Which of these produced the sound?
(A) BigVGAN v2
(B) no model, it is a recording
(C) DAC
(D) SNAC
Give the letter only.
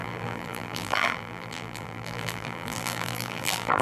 A